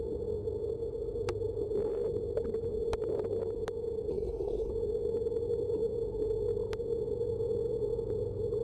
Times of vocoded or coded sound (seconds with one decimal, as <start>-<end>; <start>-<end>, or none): 4.1-4.7